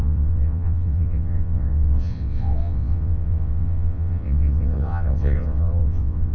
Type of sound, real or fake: fake